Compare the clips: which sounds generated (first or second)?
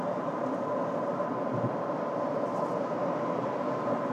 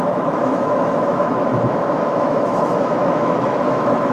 second